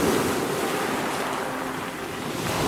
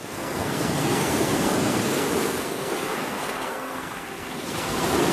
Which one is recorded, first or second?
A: first